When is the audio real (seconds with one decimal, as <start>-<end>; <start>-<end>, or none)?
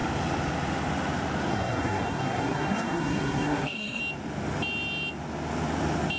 0.0-1.5; 4.0-6.2